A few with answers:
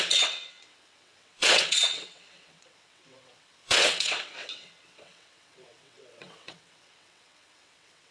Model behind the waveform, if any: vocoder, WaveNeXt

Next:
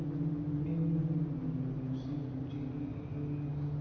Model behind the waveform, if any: none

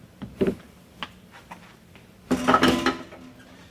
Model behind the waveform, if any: none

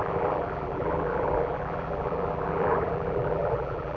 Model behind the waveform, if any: vocoder, BigVGAN v2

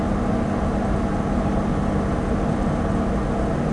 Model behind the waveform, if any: none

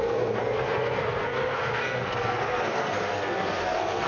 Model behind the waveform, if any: codec, SNAC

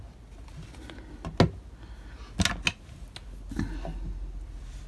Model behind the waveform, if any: none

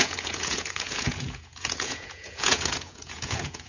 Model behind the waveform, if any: vocoder, Vocos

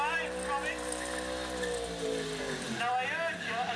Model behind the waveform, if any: none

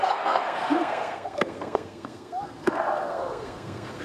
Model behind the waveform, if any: codec, SNAC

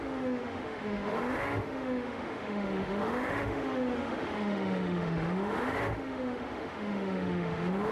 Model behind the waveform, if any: autoencoder, DAC-VAE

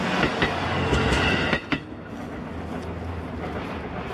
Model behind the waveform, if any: none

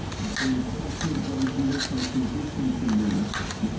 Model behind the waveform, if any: none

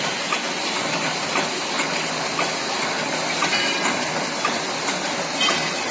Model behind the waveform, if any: none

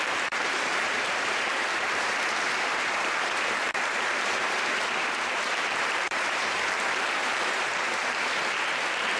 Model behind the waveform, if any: vocoder, BigVGAN v2